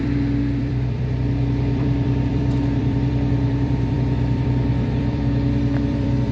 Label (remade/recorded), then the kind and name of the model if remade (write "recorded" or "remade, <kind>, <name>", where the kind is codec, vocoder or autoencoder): remade, vocoder, BigVGAN v2